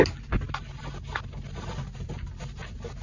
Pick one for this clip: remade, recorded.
recorded